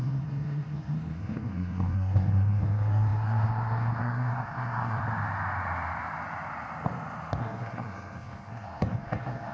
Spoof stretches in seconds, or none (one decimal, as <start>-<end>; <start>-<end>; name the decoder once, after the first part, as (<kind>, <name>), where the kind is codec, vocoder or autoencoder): 0.0-5.0 (codec, SNAC); 7.4-9.5